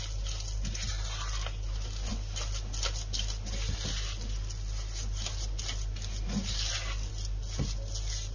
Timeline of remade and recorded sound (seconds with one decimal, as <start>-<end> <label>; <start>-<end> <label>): 0.0-8.3 recorded